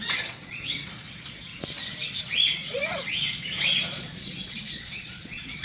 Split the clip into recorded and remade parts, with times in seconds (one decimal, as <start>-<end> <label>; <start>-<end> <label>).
0.0-1.5 remade; 1.5-2.3 recorded; 2.3-5.6 remade